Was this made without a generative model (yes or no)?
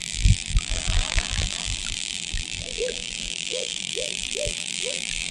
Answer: no